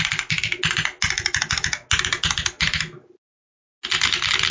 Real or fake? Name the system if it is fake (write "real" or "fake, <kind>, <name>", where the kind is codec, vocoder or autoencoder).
real